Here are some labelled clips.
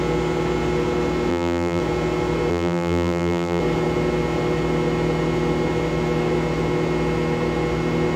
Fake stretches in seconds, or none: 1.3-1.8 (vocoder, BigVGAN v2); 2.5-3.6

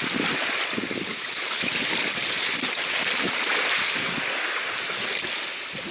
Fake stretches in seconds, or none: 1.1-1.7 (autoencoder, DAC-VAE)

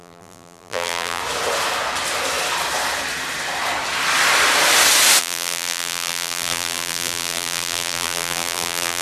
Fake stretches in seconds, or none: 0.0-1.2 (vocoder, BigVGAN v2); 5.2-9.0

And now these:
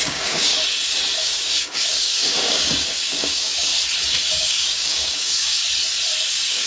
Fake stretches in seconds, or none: 0.0-0.5 (codec, DAC); 1.2-3.7; 4.3-5.6; 6.3-6.7